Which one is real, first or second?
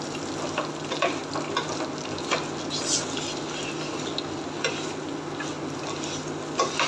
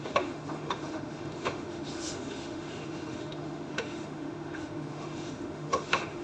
first